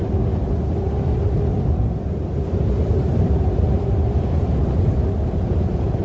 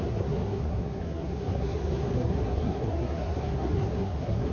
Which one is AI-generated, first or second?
second